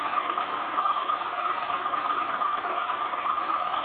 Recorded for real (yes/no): no